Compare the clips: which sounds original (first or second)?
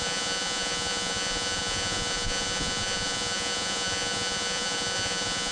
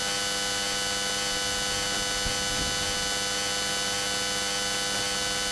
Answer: second